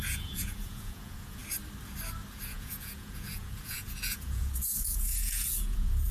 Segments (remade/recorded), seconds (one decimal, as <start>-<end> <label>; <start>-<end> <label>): 0.0-1.4 remade; 1.4-2.3 recorded; 2.3-6.1 remade